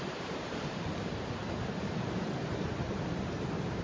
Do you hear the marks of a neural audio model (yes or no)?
yes